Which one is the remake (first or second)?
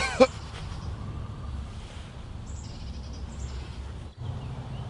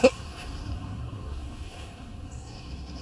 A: second